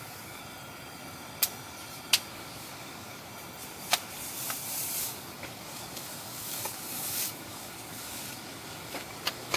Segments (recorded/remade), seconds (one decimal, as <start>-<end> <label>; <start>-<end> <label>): 0.0-0.4 remade; 0.4-2.3 recorded; 2.3-3.3 remade; 3.3-5.0 recorded; 5.0-9.6 remade